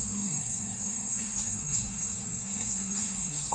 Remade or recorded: remade